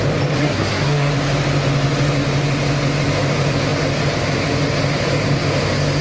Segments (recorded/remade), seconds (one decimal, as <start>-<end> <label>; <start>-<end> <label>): 0.0-0.4 recorded; 0.4-1.1 remade; 1.1-6.0 recorded

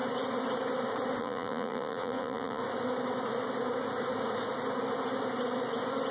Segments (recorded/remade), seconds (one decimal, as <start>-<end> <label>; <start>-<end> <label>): 0.0-1.2 recorded; 1.2-2.6 remade; 2.6-6.1 recorded

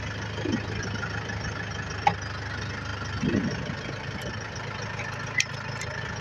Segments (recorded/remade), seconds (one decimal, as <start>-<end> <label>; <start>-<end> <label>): 0.0-6.2 recorded

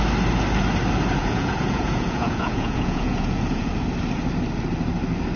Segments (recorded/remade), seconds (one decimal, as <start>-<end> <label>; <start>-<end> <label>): 0.0-1.2 recorded; 1.2-3.7 remade; 3.7-5.4 recorded